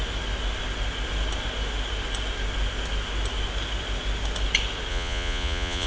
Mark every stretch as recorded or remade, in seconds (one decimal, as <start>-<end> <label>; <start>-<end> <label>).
0.0-4.9 recorded; 4.9-5.9 remade